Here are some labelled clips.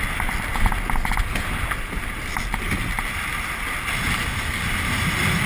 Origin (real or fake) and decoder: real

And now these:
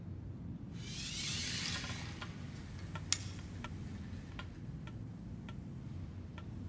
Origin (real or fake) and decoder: real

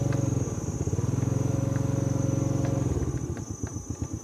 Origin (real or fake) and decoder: real